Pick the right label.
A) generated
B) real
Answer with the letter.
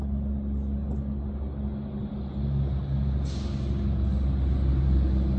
B